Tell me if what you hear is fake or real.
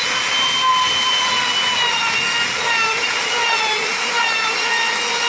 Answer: real